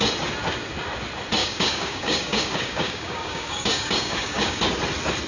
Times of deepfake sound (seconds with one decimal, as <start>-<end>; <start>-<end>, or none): 1.4-4.6